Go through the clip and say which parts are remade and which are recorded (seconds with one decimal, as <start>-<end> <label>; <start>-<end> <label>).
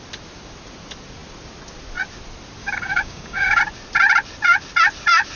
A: 0.0-2.6 recorded; 2.6-3.6 remade; 3.6-5.4 recorded